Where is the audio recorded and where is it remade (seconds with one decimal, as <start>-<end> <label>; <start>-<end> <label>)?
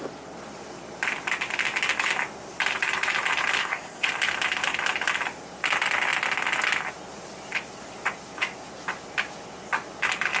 0.0-3.6 recorded; 3.6-4.1 remade; 4.1-10.4 recorded